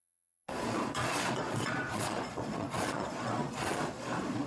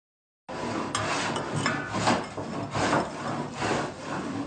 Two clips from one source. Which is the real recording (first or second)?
second